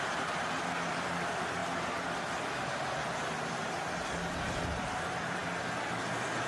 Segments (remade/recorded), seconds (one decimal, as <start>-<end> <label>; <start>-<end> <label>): 0.0-6.5 recorded